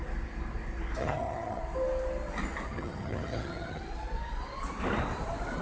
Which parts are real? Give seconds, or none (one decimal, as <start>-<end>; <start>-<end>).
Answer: 0.0-1.0; 1.6-2.7; 3.8-5.6